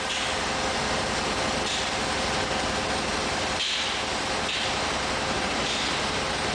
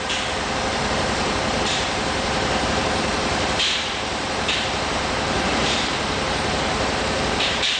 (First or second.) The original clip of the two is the first